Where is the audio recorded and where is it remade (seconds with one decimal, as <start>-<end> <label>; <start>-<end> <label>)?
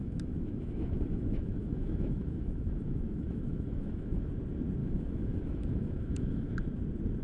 0.0-4.3 remade; 4.3-4.8 recorded; 4.8-6.5 remade; 6.5-7.2 recorded